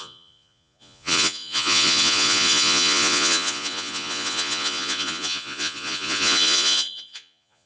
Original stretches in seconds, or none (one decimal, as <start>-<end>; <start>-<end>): none